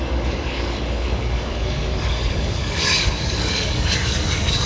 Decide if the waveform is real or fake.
fake